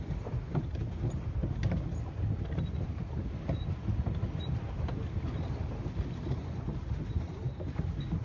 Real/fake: real